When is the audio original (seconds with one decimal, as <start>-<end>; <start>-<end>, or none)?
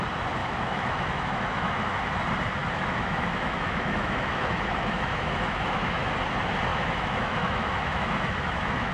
0.0-0.4; 2.2-2.6; 6.1-6.7